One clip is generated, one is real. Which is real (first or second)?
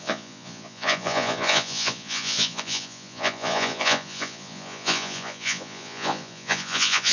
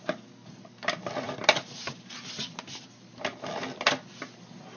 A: second